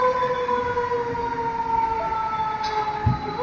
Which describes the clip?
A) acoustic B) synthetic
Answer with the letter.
A